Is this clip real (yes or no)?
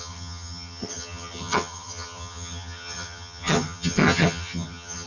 no